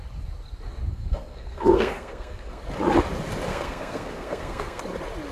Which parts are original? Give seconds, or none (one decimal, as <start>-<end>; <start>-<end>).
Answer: 0.0-0.9; 2.6-3.5; 4.8-5.3